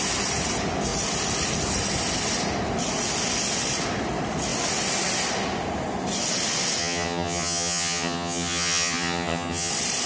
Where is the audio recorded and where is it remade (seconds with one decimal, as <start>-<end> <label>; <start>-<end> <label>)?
0.0-6.8 recorded; 6.8-9.7 remade; 9.7-10.1 recorded